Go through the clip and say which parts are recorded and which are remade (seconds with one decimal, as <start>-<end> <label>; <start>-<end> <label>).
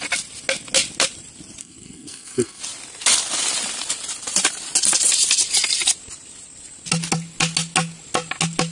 0.0-1.6 recorded; 1.6-2.6 remade; 2.6-8.7 recorded